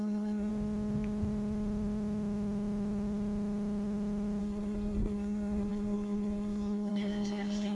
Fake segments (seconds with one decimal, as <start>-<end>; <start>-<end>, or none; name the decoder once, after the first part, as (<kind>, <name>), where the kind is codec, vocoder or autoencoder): 0.0-0.5 (codec, SNAC); 4.4-7.7